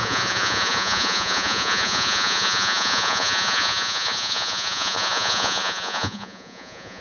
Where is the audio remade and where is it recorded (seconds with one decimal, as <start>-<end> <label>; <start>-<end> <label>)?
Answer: 0.0-7.0 remade